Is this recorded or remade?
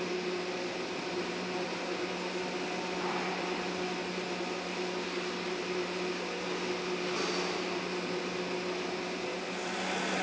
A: recorded